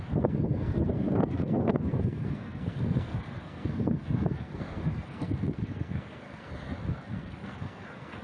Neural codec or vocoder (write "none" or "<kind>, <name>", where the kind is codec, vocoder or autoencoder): codec, SNAC